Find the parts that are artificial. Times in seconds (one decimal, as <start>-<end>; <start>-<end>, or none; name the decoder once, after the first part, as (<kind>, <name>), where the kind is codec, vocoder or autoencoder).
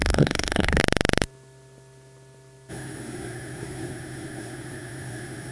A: 0.0-0.8 (codec, SNAC); 2.7-5.5